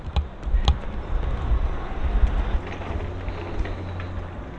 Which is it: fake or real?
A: real